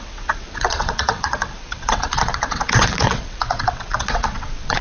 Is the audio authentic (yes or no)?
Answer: no